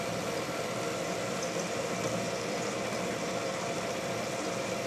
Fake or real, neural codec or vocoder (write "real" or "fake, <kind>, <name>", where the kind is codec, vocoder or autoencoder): real